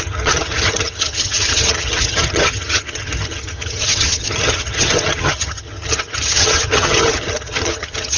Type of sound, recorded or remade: remade